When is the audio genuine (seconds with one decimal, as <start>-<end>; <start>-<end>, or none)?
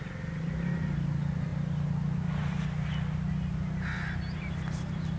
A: 0.0-5.2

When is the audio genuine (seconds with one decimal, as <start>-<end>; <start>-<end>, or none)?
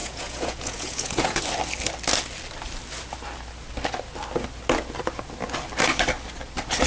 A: 1.4-6.9